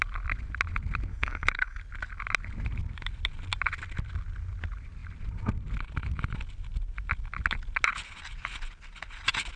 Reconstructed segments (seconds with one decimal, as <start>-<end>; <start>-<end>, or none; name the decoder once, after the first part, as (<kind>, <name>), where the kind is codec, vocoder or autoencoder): 1.1-1.8 (codec, SNAC)